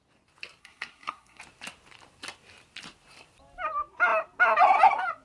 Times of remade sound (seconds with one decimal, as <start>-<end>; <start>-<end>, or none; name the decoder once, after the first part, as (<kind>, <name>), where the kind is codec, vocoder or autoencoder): 0.6-1.4 (codec, SNAC)